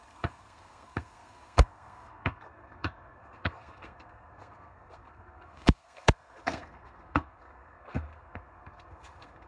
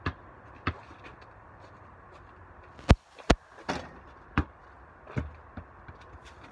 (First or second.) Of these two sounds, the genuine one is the second